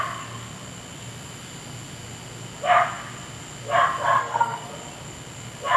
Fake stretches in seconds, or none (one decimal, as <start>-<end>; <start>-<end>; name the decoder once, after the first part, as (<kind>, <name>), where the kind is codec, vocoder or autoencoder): 4.2-4.7 (codec, SNAC)